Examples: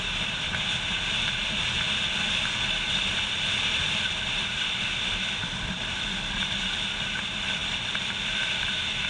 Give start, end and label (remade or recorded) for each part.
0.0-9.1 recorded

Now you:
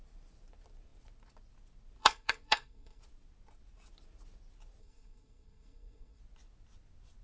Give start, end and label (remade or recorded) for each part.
0.0-2.0 recorded; 2.0-3.0 remade; 3.0-4.8 recorded; 4.8-6.2 remade; 6.2-7.2 recorded

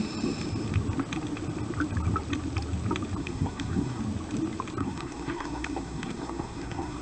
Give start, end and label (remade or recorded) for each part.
0.0-3.2 recorded; 3.2-4.0 remade; 4.0-4.8 recorded; 4.8-7.0 remade